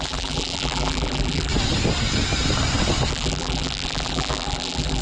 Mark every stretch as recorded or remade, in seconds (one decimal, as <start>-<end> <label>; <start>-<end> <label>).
0.0-1.5 remade; 1.5-3.1 recorded; 3.1-5.0 remade